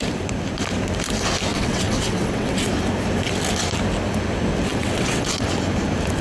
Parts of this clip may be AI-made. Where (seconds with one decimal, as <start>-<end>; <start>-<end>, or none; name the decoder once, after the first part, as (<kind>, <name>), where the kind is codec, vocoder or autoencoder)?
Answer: 1.5-2.7 (vocoder, WaveNeXt); 4.7-5.5